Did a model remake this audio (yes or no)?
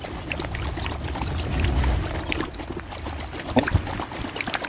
no